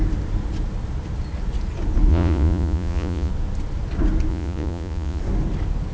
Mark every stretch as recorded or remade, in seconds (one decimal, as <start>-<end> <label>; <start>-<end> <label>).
0.0-2.1 recorded; 2.1-3.3 remade; 3.3-4.3 recorded; 4.3-5.2 remade; 5.2-5.9 recorded